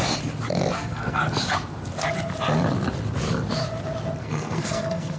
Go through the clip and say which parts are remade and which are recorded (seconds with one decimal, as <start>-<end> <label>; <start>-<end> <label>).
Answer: 0.0-0.7 recorded; 0.7-1.2 remade; 1.2-4.2 recorded; 4.2-5.2 remade